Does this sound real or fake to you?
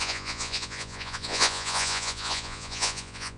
fake